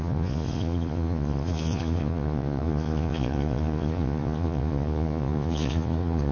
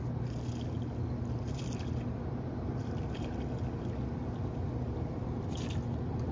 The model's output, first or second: first